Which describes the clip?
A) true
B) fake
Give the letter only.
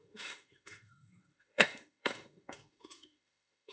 B